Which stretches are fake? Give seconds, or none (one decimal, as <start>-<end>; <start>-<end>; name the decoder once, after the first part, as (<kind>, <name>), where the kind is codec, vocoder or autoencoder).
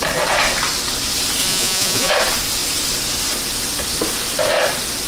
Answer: 1.4-2.1 (vocoder, Vocos)